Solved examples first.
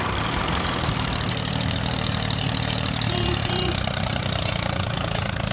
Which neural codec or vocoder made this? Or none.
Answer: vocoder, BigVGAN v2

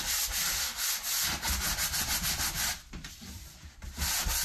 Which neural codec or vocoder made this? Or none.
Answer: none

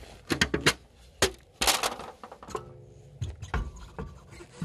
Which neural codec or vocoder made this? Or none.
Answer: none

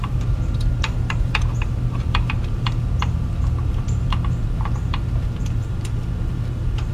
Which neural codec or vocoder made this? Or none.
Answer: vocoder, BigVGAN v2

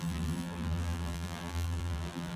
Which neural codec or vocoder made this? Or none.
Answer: vocoder, BigVGAN v2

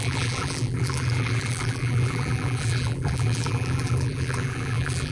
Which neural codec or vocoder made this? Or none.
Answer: vocoder, BigVGAN v2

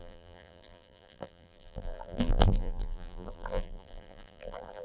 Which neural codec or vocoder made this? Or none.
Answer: vocoder, BigVGAN v2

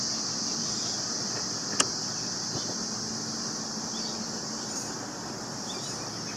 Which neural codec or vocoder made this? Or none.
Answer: none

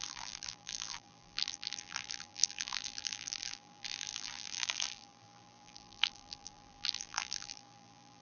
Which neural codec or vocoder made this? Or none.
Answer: vocoder, BigVGAN v2